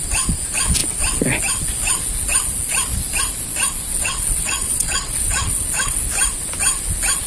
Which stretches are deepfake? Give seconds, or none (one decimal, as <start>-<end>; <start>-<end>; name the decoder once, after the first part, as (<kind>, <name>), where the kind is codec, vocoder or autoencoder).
3.9-6.0 (vocoder, WaveNeXt)